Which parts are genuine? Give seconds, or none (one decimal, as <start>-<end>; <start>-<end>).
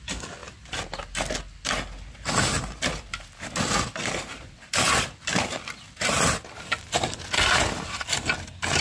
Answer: 0.0-8.8